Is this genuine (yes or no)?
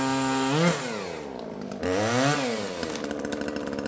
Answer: yes